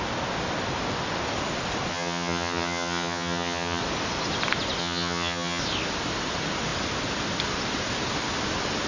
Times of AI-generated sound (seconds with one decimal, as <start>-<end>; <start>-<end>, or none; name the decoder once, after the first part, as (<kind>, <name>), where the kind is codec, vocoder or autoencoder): 1.9-3.8 (vocoder, HiFi-GAN); 4.8-5.6